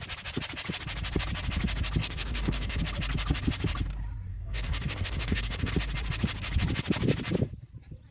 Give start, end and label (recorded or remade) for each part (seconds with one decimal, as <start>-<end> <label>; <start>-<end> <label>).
0.0-2.0 recorded; 2.0-2.8 remade; 2.8-4.3 recorded; 4.3-5.7 remade; 5.7-8.1 recorded